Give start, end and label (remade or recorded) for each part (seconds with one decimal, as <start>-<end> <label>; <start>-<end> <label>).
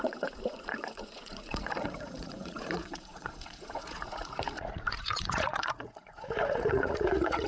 0.0-7.5 remade